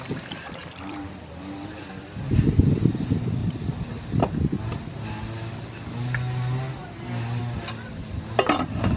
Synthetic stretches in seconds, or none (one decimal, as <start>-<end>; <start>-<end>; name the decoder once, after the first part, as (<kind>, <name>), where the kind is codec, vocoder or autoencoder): 0.6-2.7 (vocoder, BigVGAN v2); 3.4-4.3